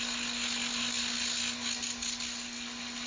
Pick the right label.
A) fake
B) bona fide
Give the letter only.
B